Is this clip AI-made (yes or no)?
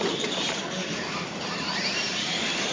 yes